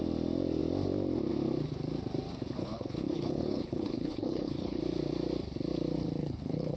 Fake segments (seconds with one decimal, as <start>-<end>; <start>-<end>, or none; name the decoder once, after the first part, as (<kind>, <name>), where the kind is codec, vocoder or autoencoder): 2.6-4.8 (codec, HILCodec); 6.2-6.8